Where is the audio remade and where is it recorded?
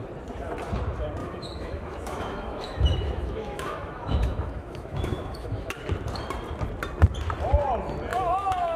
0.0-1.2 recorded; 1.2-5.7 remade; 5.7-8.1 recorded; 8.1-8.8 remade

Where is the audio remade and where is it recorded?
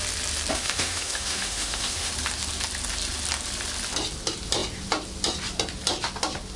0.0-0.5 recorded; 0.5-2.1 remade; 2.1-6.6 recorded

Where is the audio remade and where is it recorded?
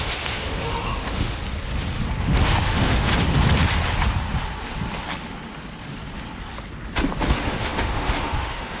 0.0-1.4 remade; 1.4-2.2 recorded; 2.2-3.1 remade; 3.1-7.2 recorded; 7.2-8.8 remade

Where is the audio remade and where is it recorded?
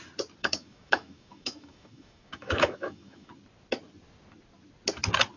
0.0-0.4 recorded; 0.4-3.3 remade; 3.3-5.4 recorded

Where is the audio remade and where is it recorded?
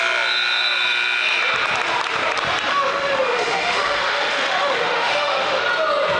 0.0-2.7 recorded; 2.7-5.6 remade; 5.6-6.2 recorded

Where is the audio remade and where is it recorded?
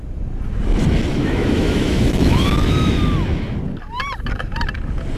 0.0-1.1 recorded; 1.1-3.0 remade; 3.0-5.2 recorded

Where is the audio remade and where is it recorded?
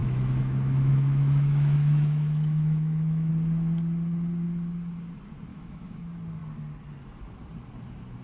0.0-3.3 remade; 3.3-5.5 recorded; 5.5-6.0 remade; 6.0-8.2 recorded